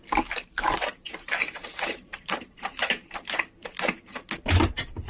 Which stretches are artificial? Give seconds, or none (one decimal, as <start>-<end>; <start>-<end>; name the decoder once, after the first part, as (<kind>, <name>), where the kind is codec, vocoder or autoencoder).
0.0-5.1 (vocoder, BigVGAN v2)